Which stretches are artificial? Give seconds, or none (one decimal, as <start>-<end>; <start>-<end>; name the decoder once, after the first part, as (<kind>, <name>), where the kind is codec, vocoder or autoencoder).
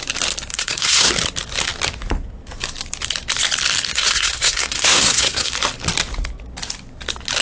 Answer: 0.5-1.1 (codec, SNAC); 3.9-5.5